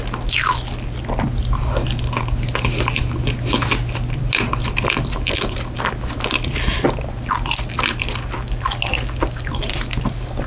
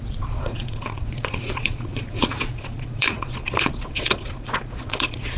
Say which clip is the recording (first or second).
first